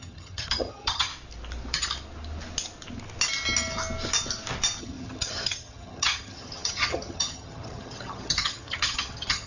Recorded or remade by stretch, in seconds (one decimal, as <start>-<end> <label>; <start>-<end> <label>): 0.0-1.1 remade; 1.1-4.8 recorded; 4.8-9.5 remade